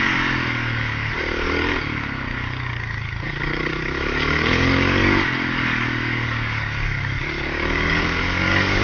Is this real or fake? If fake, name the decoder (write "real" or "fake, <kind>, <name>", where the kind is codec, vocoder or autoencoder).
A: fake, codec, DAC